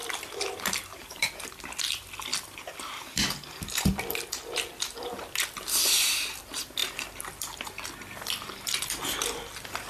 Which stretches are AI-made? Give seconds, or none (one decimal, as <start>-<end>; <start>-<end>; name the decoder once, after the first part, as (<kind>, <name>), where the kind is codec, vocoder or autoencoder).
0.0-9.9 (vocoder, BigVGAN v2)